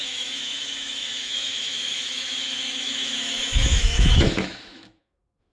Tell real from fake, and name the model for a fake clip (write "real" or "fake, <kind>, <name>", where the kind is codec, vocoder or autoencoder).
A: fake, autoencoder, DAC-VAE